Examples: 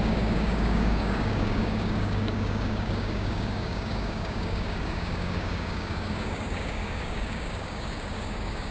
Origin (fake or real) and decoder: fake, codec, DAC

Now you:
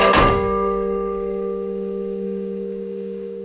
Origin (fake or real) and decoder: fake, codec, DAC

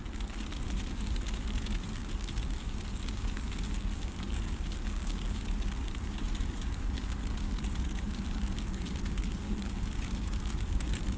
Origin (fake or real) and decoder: fake, codec, DAC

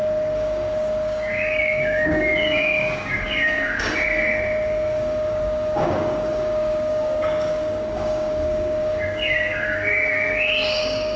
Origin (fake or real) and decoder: fake, codec, DAC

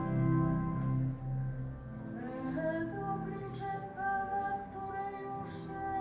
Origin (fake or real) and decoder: real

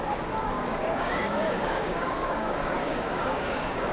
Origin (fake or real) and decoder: fake, codec, DAC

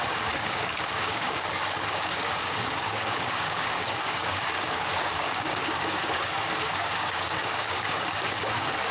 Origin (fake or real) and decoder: fake, codec, DAC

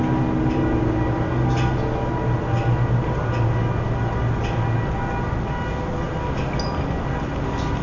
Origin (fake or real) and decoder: real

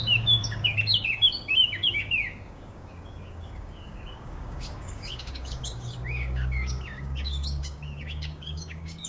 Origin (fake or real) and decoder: fake, codec, DAC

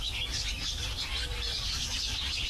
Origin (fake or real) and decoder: fake, codec, DAC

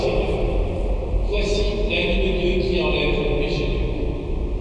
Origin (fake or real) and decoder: real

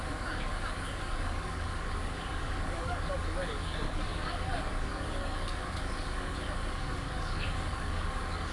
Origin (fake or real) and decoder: fake, codec, DAC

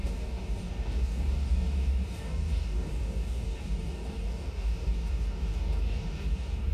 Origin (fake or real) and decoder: fake, codec, DAC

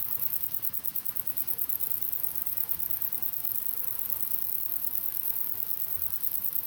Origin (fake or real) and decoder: fake, codec, DAC